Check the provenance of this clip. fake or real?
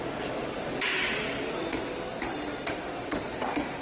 real